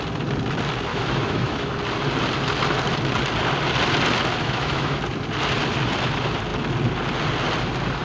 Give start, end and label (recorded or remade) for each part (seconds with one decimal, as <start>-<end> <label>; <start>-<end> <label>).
0.0-0.9 recorded; 0.9-1.7 remade; 1.7-4.4 recorded; 4.4-5.0 remade; 5.0-8.0 recorded